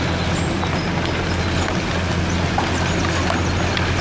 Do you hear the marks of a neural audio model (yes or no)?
no